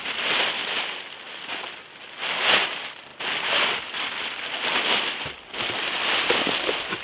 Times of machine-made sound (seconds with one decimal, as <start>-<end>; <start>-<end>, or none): 0.0-0.6; 2.6-3.1; 3.9-7.0

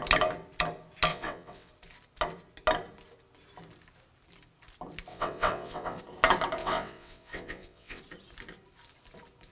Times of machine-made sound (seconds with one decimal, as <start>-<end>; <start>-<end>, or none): 1.1-1.7; 5.1-6.0; 6.6-8.0

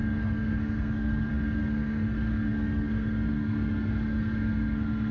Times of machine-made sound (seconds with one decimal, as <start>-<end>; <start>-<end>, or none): 0.0-5.1

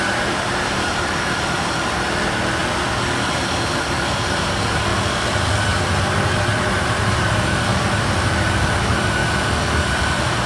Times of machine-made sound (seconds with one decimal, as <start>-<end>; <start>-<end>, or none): 0.0-2.6; 3.3-4.9; 6.0-7.7; 8.7-9.2; 9.8-10.5

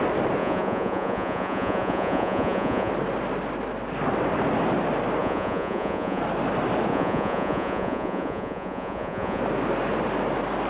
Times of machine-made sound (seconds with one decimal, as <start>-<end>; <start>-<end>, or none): 0.4-2.9; 5.2-6.2; 6.9-9.4

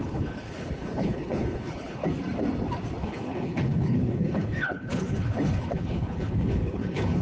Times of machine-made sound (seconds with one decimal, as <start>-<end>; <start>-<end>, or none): 0.0-2.0; 3.0-7.2